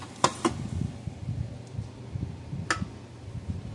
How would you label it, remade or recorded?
recorded